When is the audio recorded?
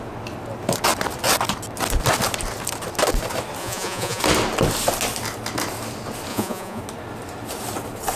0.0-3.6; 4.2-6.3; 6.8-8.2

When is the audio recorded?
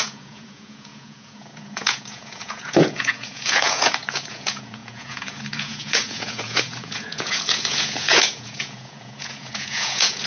none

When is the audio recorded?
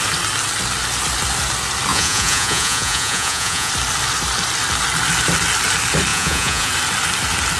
0.0-1.9; 3.7-6.1; 6.7-7.6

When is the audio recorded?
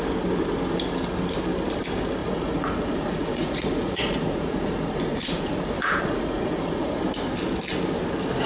0.0-2.2; 7.0-8.5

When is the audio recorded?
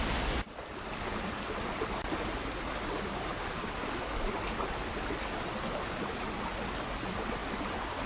0.0-8.1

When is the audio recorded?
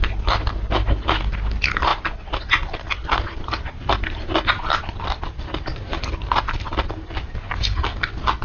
0.0-8.4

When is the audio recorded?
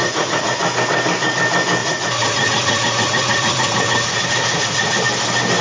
0.6-1.8; 5.0-5.6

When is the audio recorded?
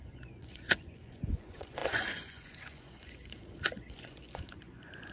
none